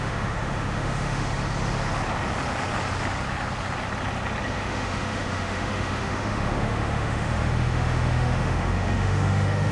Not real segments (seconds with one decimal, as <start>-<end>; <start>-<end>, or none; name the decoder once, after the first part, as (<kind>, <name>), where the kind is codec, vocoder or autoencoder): 0.0-1.3 (autoencoder, DAC-VAE); 4.5-9.7